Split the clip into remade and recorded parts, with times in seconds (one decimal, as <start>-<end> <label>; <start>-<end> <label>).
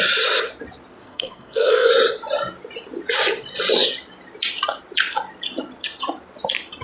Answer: 0.0-1.0 recorded; 1.0-1.9 remade; 1.9-6.8 recorded